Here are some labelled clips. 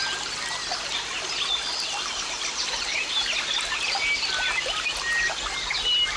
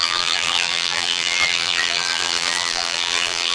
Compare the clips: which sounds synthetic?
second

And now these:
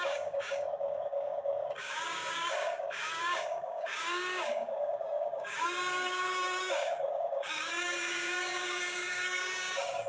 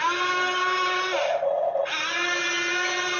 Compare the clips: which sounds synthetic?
first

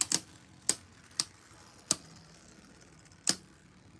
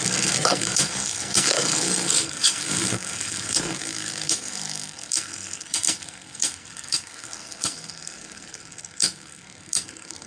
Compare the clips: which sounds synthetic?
second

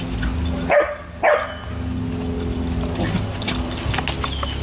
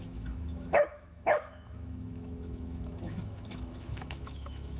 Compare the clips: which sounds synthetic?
second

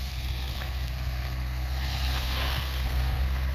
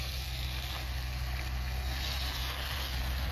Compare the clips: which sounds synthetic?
first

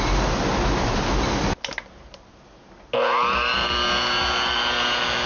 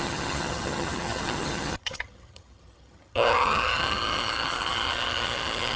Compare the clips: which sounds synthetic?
second